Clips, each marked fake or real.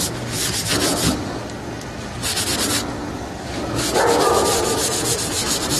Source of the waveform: real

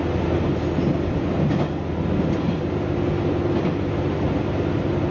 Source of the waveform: real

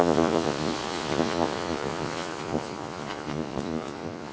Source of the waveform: fake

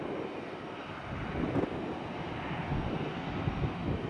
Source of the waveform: real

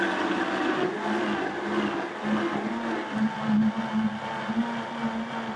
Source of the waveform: real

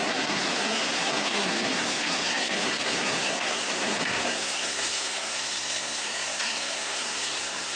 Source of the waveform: fake